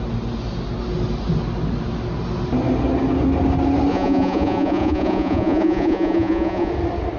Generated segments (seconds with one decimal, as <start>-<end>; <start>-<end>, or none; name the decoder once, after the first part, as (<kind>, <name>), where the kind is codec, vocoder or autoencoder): 3.9-6.7 (vocoder, Vocos)